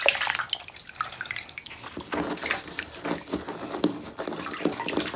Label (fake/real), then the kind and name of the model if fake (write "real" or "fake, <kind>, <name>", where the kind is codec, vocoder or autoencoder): real